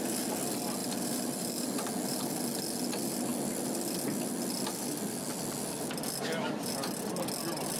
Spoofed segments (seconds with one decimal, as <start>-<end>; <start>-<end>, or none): 0.8-1.9